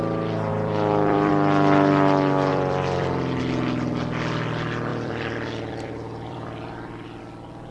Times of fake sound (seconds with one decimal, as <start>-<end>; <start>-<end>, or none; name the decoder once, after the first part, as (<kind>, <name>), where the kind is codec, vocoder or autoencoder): 0.5-1.3 (vocoder, BigVGAN v2); 2.5-3.4; 4.9-7.2